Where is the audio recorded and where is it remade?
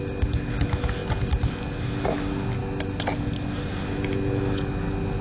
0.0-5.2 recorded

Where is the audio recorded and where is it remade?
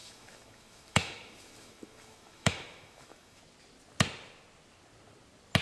0.0-3.4 remade; 3.4-5.6 recorded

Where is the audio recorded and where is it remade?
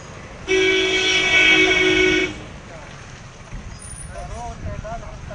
0.0-5.3 recorded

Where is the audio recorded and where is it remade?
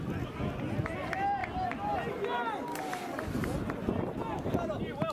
0.0-5.1 recorded